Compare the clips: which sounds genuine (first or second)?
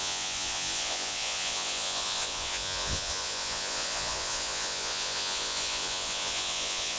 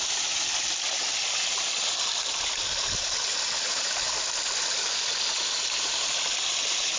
second